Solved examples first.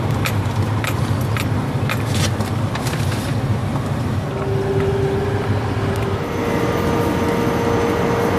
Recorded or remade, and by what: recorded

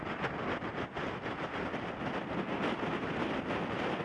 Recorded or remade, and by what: recorded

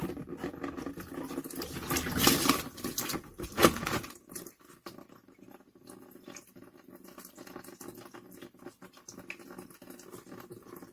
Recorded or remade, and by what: recorded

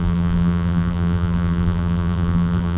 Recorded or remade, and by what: remade, vocoder, BigVGAN v2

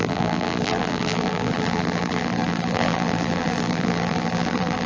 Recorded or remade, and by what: remade, vocoder, BigVGAN v2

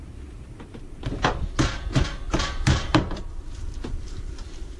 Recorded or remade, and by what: remade, vocoder, BigVGAN v2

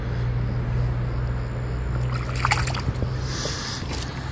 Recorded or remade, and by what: recorded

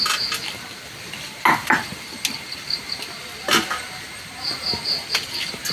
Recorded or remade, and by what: recorded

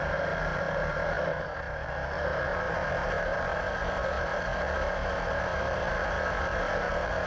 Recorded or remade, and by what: remade, vocoder, BigVGAN v2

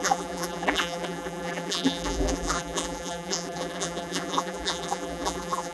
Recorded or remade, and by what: remade, vocoder, BigVGAN v2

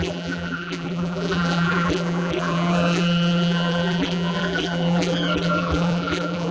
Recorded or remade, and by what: remade, vocoder, BigVGAN v2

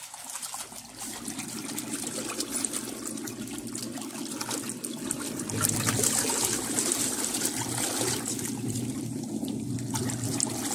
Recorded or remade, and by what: recorded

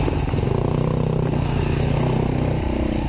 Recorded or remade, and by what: recorded